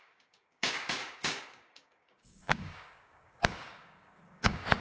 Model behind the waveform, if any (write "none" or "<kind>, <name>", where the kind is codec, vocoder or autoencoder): codec, DAC